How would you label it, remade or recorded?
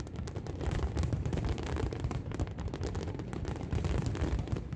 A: remade